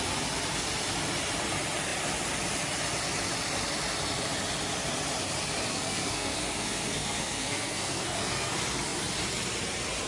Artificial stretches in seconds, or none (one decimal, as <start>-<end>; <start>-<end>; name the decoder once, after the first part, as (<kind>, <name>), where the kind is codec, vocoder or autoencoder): 5.7-8.5 (codec, SNAC)